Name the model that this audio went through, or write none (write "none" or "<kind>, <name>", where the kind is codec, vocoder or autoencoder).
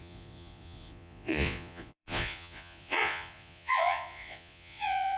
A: vocoder, Vocos